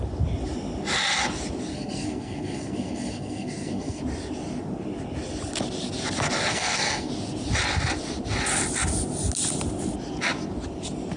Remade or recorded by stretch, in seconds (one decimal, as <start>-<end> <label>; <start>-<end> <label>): 0.0-1.7 recorded; 1.7-4.0 remade; 4.0-6.5 recorded; 6.5-7.1 remade; 7.1-11.2 recorded